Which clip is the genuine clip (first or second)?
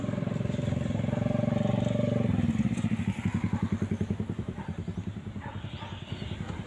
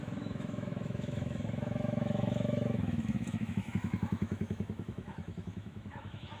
first